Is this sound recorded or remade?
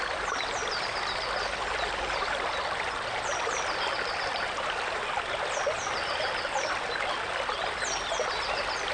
recorded